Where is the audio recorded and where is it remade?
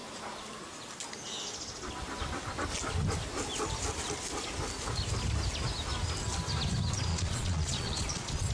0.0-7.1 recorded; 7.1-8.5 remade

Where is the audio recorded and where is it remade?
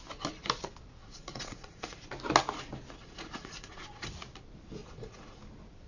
0.0-1.0 recorded; 1.0-2.0 remade; 2.0-3.0 recorded; 3.0-4.1 remade; 4.1-4.8 recorded; 4.8-5.4 remade; 5.4-5.9 recorded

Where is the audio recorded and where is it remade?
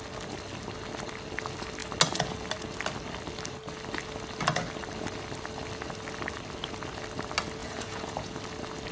0.0-7.6 recorded; 7.6-8.4 remade; 8.4-8.9 recorded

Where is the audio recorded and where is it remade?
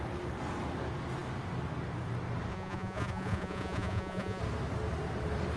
0.0-2.5 recorded; 2.5-4.4 remade; 4.4-5.6 recorded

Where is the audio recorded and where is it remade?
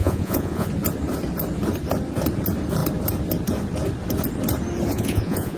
0.0-0.7 remade; 0.7-4.9 recorded; 4.9-5.6 remade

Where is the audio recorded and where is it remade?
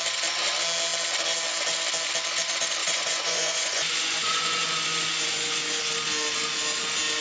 0.0-2.8 recorded; 2.8-5.8 remade; 5.8-7.2 recorded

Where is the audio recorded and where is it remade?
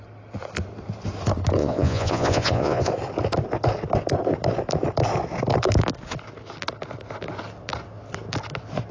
0.0-1.6 recorded; 1.6-2.9 remade; 2.9-8.9 recorded